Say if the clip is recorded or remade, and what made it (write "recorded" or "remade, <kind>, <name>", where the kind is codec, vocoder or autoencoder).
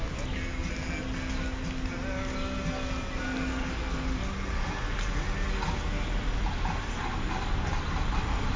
recorded